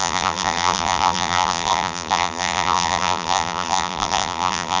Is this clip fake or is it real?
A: fake